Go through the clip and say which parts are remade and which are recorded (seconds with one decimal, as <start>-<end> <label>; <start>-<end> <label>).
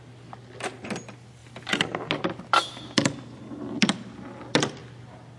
0.0-5.4 recorded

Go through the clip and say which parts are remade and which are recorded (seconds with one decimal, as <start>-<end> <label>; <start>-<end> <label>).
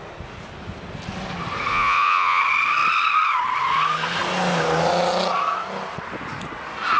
0.0-1.7 recorded; 1.7-2.4 remade; 2.4-7.0 recorded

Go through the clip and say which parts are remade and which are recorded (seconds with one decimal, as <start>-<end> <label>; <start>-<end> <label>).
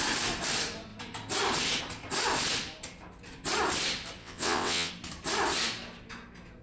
0.0-4.2 recorded; 4.2-4.9 remade; 4.9-6.6 recorded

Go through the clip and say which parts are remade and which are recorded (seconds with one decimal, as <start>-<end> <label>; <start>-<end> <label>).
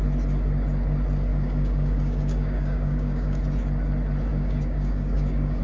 0.0-1.3 recorded; 1.3-3.4 remade; 3.4-4.3 recorded; 4.3-5.6 remade